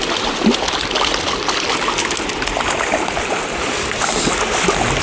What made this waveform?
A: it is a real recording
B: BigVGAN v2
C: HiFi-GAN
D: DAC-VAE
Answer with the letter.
A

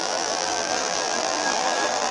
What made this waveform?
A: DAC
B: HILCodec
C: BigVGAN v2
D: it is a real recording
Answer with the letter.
C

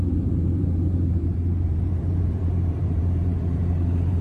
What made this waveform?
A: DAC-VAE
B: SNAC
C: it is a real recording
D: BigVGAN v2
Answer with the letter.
D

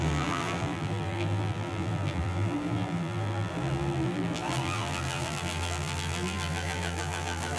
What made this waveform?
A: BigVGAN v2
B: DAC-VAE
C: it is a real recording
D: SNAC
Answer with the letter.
A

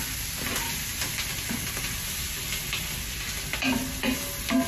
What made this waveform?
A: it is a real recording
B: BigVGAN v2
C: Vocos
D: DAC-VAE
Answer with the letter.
A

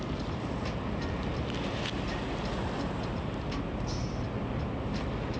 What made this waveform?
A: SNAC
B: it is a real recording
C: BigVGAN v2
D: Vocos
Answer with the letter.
B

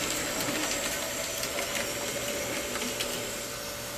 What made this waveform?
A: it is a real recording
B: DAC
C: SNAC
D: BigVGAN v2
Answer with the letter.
A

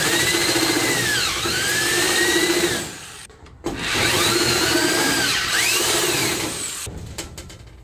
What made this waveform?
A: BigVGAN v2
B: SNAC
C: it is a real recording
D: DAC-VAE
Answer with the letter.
A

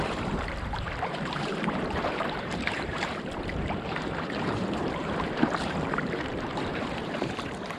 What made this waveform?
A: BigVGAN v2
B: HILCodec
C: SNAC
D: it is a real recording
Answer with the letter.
A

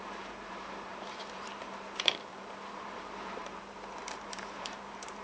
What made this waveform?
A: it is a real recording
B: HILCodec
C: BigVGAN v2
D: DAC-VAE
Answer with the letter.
C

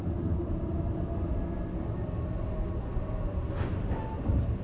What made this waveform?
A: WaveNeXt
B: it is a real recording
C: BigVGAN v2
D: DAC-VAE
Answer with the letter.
B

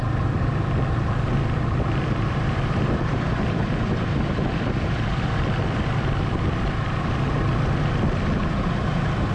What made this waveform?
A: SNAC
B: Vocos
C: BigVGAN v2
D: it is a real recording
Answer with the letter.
C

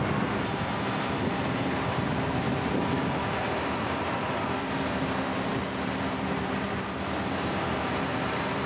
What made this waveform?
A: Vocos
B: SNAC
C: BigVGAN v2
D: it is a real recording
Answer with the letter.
C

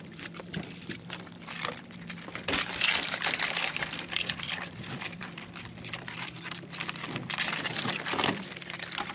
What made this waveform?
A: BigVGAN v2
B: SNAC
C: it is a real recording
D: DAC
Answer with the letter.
A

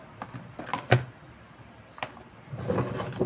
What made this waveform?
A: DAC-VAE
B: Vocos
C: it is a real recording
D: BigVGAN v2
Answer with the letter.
C